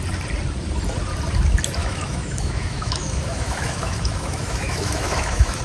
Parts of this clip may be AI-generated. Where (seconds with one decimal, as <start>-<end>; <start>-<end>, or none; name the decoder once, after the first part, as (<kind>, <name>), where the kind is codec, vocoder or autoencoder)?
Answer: 1.8-5.6 (autoencoder, DAC-VAE)